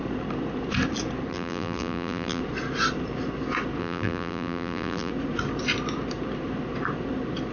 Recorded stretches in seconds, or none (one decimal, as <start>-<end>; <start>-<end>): 0.0-1.3; 2.4-3.8; 5.1-7.5